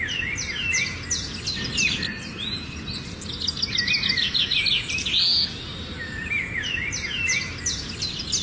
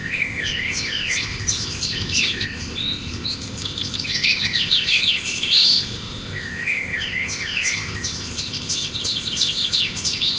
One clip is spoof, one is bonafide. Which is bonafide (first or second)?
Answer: first